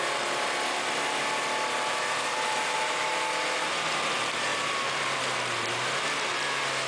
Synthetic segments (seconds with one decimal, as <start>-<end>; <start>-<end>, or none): none